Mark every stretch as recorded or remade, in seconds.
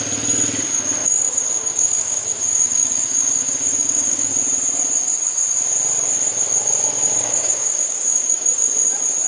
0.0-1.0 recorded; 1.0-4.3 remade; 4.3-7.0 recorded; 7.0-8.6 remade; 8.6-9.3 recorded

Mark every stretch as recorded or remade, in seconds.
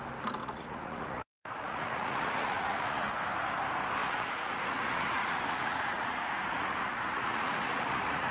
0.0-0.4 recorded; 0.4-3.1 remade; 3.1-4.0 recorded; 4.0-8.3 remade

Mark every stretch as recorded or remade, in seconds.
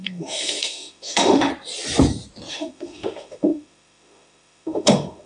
0.0-1.5 remade; 1.5-2.5 recorded; 2.5-5.3 remade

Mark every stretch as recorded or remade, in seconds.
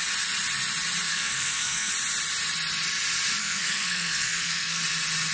0.0-1.1 recorded; 1.1-1.9 remade; 1.9-3.4 recorded; 3.4-4.8 remade; 4.8-5.3 recorded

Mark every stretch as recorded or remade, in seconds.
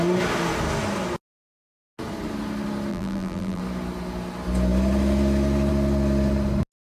0.0-2.9 recorded; 2.9-3.6 remade; 3.6-6.9 recorded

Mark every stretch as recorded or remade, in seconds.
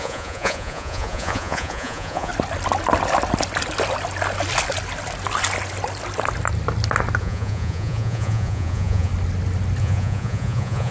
0.0-2.3 remade; 2.3-7.2 recorded; 7.2-9.1 remade; 9.1-9.8 recorded; 9.8-10.9 remade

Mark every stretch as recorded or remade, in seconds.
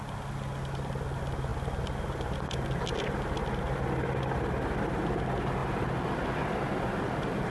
0.0-7.5 recorded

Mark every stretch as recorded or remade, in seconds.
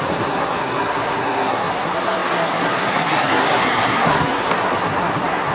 0.0-5.5 remade